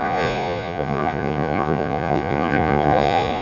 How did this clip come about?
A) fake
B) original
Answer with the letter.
A